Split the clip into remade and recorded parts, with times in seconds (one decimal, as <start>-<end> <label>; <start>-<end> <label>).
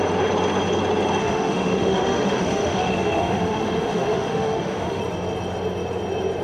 0.0-1.2 recorded; 1.2-5.0 remade; 5.0-6.4 recorded